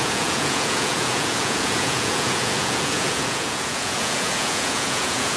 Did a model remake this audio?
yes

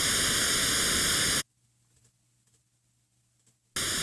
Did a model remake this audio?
no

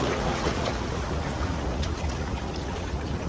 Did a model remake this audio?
yes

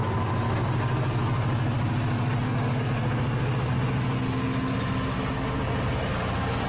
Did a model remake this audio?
no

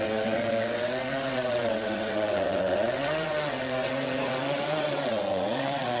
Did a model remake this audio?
yes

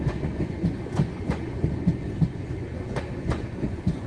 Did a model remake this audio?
yes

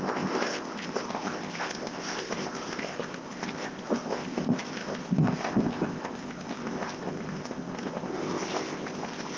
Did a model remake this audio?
yes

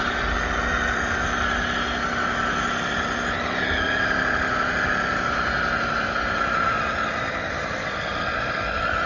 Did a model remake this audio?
no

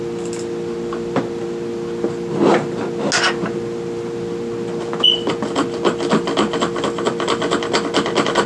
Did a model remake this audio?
no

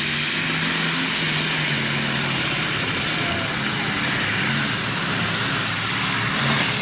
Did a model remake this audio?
no